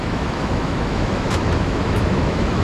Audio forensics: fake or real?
fake